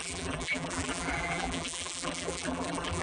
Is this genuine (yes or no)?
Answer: no